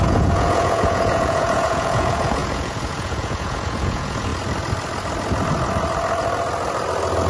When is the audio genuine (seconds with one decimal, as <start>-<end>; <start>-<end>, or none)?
4.3-7.3